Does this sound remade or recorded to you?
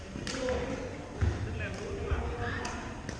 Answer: recorded